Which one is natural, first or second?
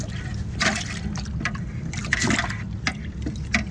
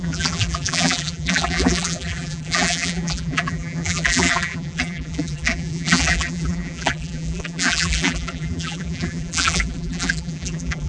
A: first